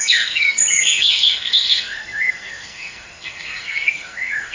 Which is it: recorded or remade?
remade